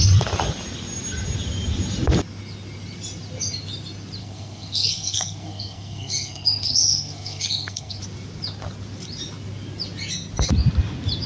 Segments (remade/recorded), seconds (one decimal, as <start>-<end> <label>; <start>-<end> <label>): 0.0-4.2 recorded; 4.2-8.0 remade; 8.0-11.3 recorded